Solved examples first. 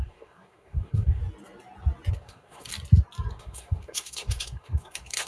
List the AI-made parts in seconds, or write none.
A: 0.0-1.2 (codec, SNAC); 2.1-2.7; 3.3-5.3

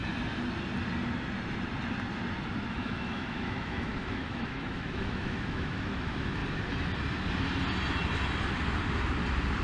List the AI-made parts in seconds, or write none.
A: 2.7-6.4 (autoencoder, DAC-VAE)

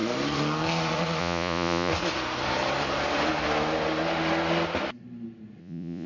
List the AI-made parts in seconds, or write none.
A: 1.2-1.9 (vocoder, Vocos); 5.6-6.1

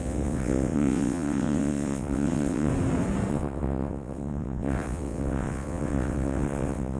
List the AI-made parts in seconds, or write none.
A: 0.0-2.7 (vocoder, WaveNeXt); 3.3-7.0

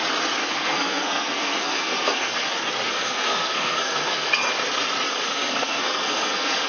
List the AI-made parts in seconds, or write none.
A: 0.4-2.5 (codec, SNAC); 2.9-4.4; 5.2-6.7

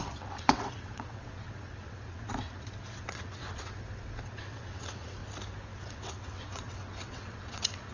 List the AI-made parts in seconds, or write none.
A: 0.0-5.2 (vocoder, WaveNeXt); 5.7-7.9

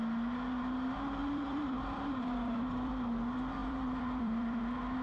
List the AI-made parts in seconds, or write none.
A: 1.2-2.9 (vocoder, BigVGAN v2); 3.6-4.6

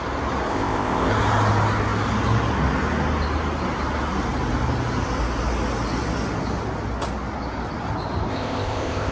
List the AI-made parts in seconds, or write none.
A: 0.5-1.1 (codec, ZipCodec); 8.3-9.1